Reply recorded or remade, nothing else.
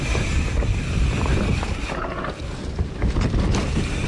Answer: recorded